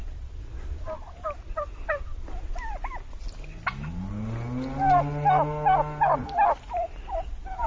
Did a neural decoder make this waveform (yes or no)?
no